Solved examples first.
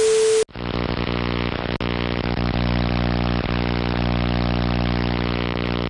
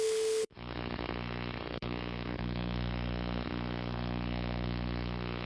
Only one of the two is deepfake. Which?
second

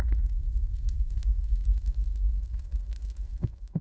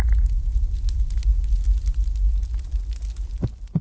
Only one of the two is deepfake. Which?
first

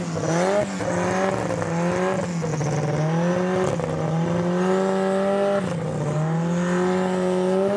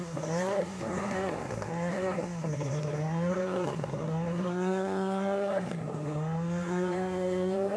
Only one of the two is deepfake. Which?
second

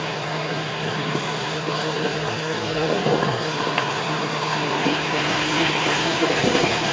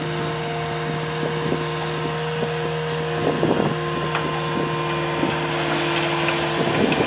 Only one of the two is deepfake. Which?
first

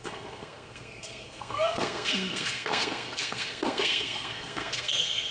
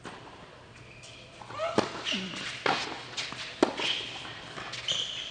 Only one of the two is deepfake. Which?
first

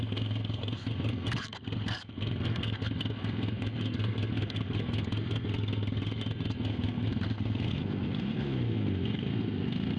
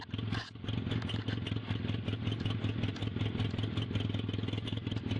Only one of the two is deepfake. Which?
first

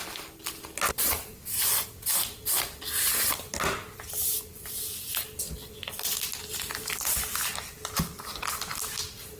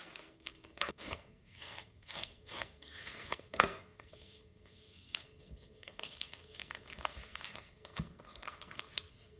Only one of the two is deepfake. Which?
second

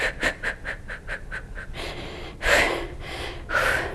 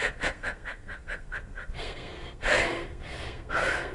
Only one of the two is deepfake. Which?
second